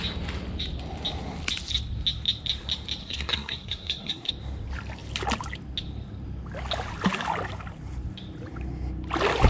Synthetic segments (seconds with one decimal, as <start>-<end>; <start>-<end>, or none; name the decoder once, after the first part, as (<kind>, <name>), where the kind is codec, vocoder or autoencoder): 3.0-4.3 (codec, SNAC)